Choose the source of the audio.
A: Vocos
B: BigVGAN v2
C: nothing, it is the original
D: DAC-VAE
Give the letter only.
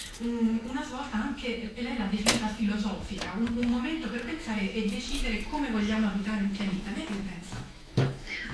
D